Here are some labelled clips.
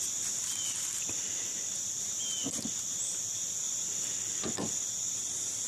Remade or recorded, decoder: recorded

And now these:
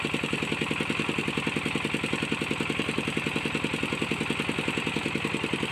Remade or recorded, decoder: recorded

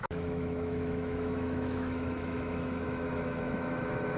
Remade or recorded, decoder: remade, autoencoder, DAC-VAE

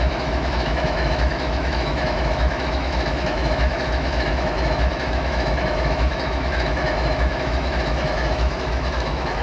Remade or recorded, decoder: remade, autoencoder, DAC-VAE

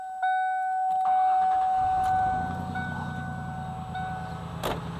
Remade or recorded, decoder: recorded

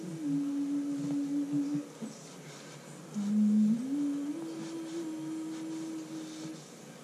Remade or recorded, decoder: recorded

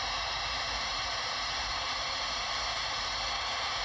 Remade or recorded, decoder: recorded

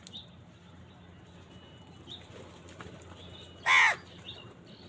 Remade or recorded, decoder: recorded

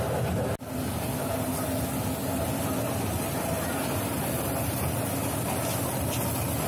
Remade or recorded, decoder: recorded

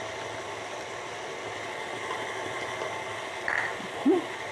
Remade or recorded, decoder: recorded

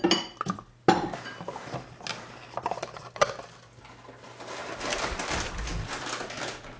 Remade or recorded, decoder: recorded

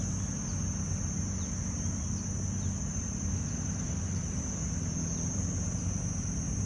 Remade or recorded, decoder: recorded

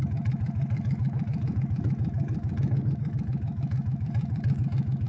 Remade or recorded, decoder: remade, autoencoder, DAC-VAE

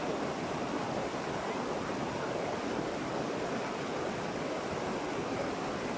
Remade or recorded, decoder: recorded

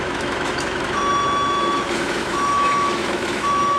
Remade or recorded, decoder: remade, autoencoder, DAC-VAE